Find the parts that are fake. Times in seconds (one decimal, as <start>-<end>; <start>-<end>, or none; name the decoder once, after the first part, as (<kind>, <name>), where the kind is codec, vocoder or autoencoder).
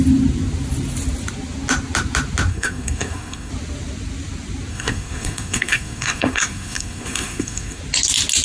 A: 2.5-3.5 (codec, SNAC); 4.7-7.8